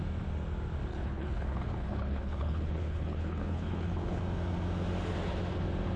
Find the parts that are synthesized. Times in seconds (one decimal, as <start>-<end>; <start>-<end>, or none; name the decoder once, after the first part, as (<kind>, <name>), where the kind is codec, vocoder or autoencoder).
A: 0.9-4.2 (codec, HILCodec)